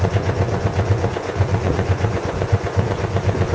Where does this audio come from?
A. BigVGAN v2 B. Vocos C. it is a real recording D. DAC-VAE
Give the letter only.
B